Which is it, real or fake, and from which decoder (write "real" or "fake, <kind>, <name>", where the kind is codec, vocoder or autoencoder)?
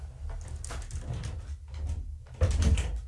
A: real